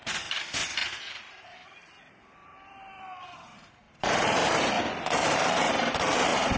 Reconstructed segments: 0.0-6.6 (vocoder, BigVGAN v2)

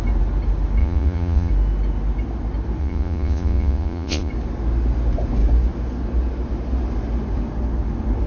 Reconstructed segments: 0.8-1.5 (vocoder, Vocos); 2.8-4.3

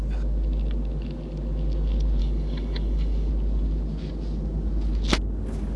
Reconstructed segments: 2.2-3.3 (codec, DAC)

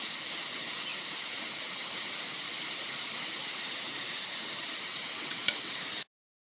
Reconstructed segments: 4.9-5.7 (vocoder, WaveNeXt)

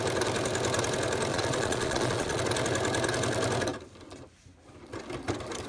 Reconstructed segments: 1.3-2.4 (vocoder, Vocos)